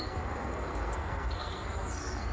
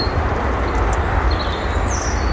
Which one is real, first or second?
second